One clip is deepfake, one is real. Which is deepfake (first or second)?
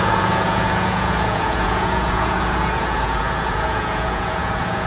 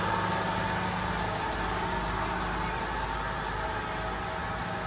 first